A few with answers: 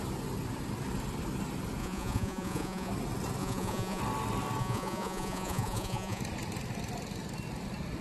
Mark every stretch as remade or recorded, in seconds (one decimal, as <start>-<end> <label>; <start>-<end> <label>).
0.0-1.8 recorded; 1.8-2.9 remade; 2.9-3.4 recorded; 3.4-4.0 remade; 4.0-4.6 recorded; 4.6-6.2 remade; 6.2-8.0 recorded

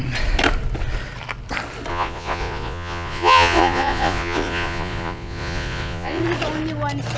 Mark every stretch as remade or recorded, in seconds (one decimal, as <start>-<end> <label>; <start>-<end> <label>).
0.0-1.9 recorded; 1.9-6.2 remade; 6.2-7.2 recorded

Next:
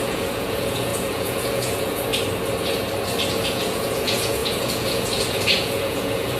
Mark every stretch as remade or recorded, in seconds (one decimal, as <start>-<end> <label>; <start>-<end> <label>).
0.0-2.1 remade; 2.1-3.3 recorded; 3.3-6.4 remade

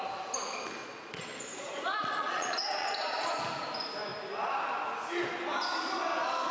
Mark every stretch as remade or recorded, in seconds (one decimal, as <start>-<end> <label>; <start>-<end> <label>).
0.0-0.8 recorded; 0.8-3.4 remade; 3.4-6.5 recorded

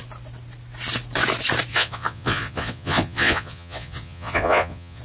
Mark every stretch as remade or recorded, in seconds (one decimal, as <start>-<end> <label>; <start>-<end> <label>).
0.0-1.7 recorded; 1.7-5.0 remade

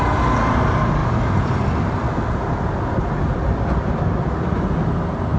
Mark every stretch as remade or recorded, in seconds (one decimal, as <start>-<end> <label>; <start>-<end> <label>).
0.0-5.4 recorded